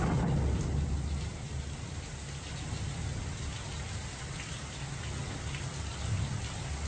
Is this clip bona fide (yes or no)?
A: yes